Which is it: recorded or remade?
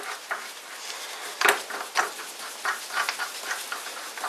recorded